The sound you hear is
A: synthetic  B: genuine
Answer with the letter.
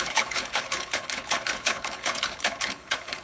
A